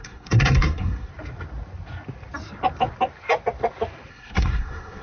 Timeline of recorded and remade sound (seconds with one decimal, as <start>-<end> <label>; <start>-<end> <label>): 0.0-1.1 remade; 1.1-4.1 recorded; 4.1-5.0 remade